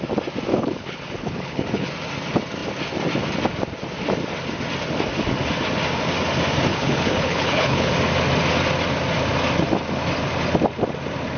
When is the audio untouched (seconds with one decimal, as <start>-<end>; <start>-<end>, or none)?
0.0-0.5; 1.9-6.7; 7.9-11.4